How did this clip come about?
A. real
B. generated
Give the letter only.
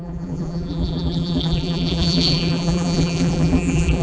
B